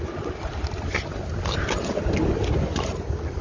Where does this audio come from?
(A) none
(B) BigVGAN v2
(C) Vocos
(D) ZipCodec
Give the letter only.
A